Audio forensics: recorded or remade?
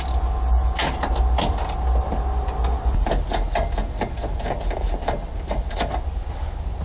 recorded